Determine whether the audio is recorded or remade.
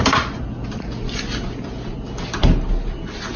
recorded